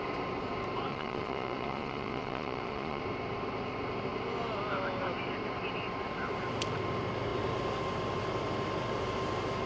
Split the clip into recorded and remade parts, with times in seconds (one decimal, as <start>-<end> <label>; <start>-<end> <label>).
0.0-0.9 recorded; 0.9-3.0 remade; 3.0-9.7 recorded